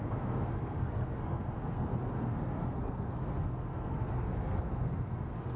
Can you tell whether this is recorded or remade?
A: remade